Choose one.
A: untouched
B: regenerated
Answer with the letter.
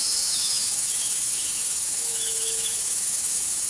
B